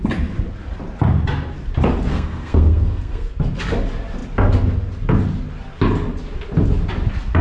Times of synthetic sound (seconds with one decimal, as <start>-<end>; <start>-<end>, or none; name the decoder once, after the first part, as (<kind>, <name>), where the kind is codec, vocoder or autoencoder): 2.1-3.3 (codec, SNAC)